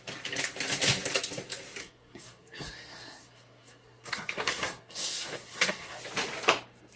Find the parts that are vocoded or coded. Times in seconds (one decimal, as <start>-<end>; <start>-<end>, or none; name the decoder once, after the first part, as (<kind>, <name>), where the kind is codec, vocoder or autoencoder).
1.8-6.0 (codec, SNAC)